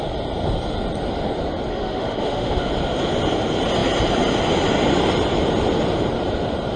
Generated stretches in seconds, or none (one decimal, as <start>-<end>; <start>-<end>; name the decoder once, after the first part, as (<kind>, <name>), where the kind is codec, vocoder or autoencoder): 1.7-2.7 (autoencoder, DAC-VAE)